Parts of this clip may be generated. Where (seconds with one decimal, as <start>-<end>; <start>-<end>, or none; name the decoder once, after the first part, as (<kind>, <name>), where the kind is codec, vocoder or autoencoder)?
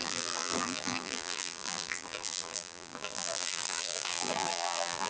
0.0-5.1 (vocoder, BigVGAN v2)